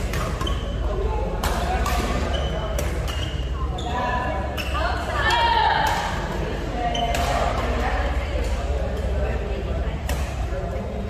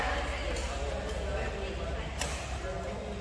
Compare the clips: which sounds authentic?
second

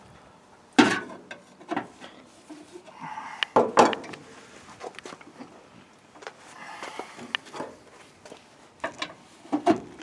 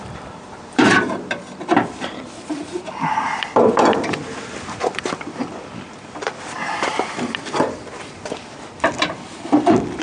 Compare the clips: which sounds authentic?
first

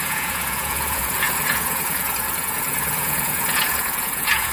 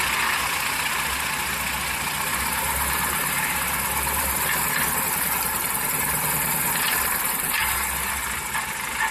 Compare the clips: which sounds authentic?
second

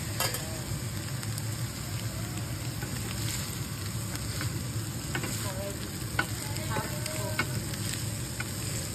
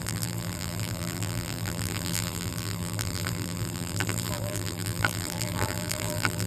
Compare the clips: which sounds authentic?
first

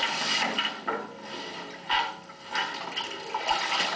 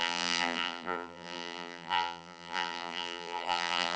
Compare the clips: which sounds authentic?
first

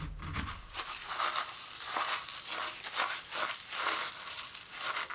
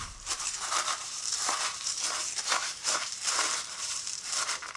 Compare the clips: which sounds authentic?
first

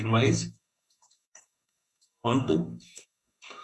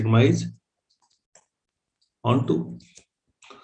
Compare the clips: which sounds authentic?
second